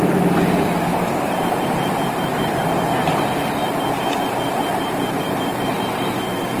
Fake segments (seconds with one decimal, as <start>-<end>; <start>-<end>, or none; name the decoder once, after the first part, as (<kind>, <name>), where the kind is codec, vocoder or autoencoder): 0.0-6.6 (vocoder, BigVGAN v2)